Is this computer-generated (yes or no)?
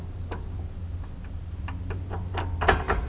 no